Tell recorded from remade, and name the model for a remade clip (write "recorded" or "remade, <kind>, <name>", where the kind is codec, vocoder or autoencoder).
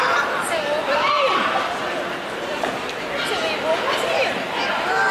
recorded